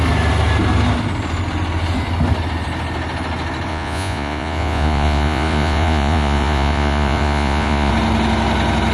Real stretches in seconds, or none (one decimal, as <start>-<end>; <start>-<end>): 0.0-3.7; 7.9-8.9